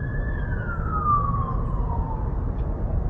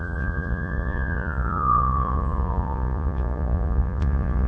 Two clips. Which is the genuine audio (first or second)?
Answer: first